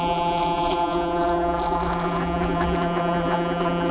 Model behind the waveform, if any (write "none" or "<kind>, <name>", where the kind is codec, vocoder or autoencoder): vocoder, BigVGAN v2